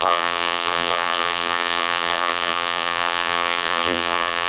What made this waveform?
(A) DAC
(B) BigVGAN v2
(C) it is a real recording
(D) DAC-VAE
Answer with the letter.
B